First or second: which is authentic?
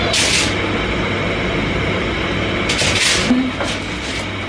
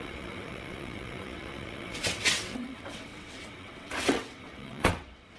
first